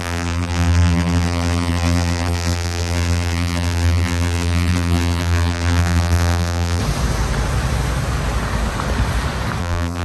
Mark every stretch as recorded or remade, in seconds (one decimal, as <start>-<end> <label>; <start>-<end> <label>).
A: 0.0-6.8 remade; 6.8-9.6 recorded; 9.6-10.0 remade